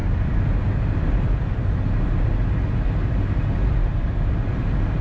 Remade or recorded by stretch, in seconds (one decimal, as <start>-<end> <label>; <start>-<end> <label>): 0.0-1.8 remade; 1.8-3.8 recorded; 3.8-4.5 remade; 4.5-5.0 recorded